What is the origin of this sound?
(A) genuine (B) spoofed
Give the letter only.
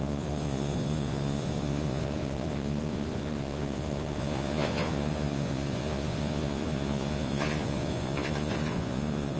B